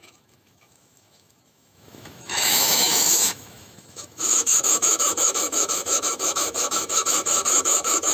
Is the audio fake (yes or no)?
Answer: yes